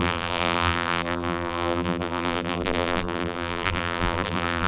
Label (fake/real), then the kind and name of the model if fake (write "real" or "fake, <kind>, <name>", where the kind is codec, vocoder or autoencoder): fake, vocoder, BigVGAN v2